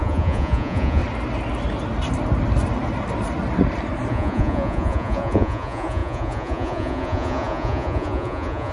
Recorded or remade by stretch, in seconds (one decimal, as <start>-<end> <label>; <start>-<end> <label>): 0.0-1.0 remade; 1.0-4.1 recorded; 4.1-8.7 remade